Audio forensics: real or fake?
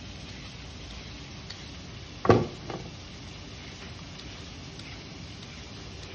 real